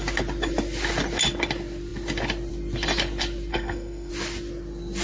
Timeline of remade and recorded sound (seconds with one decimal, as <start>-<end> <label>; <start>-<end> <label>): 0.0-3.5 recorded; 3.5-4.1 remade; 4.1-5.0 recorded